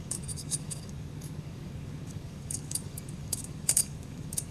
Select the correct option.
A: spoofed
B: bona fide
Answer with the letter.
A